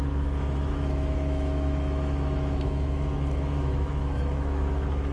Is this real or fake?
fake